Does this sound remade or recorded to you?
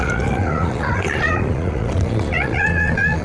remade